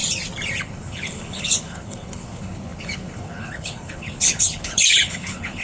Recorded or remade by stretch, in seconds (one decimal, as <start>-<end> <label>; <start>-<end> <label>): 0.0-0.6 recorded; 0.6-5.6 remade